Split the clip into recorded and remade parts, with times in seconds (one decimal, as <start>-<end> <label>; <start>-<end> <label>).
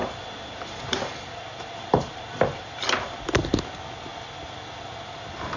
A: 0.0-2.8 remade; 2.8-4.1 recorded; 4.1-4.8 remade; 4.8-5.6 recorded